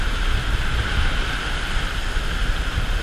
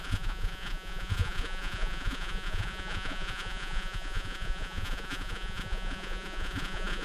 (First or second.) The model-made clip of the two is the second